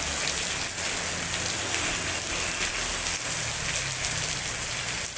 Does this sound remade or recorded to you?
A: recorded